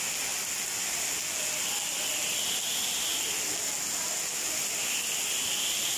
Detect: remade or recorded recorded